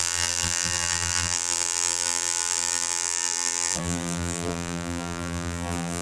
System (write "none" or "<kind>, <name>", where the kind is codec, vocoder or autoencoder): vocoder, BigVGAN v2